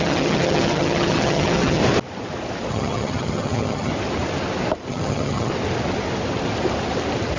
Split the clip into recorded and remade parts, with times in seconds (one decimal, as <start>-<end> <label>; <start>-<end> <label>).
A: 0.0-1.8 remade; 1.8-2.7 recorded; 2.7-3.9 remade; 3.9-4.9 recorded; 4.9-5.5 remade; 5.5-7.4 recorded